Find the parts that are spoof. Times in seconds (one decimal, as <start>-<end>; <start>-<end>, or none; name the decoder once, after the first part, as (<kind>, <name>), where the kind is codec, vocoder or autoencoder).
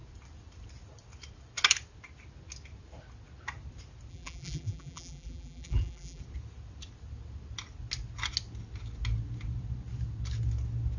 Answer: 4.1-6.2 (vocoder, BigVGAN v2)